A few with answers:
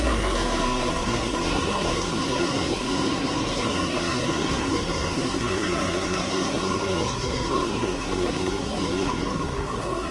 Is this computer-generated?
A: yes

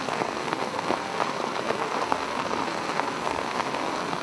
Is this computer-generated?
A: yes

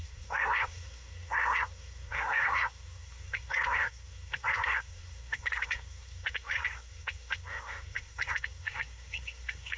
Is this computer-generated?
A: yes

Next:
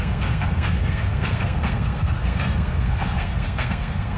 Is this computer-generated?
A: yes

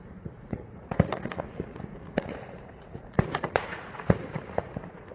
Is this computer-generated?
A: yes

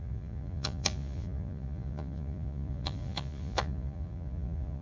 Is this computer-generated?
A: yes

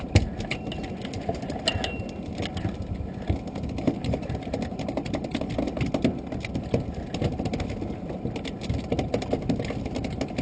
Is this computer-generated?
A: no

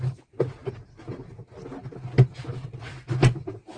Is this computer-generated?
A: no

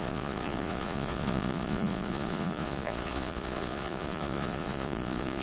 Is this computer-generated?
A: yes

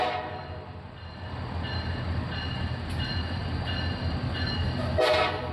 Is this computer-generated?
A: no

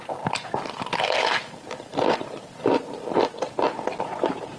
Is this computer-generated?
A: no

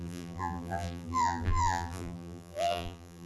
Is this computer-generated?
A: yes